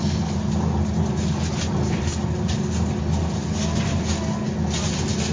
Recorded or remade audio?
recorded